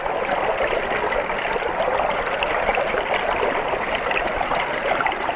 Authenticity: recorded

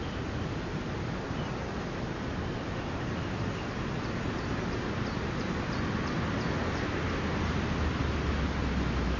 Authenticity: recorded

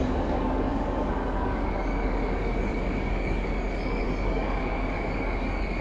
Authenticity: remade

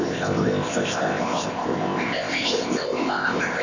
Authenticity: remade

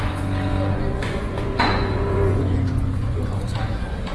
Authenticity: remade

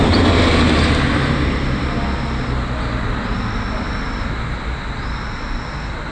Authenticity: recorded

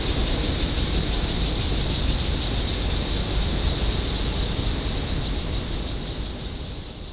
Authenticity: recorded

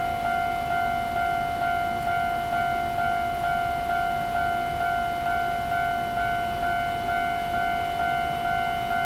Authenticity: recorded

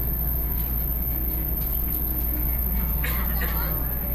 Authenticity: recorded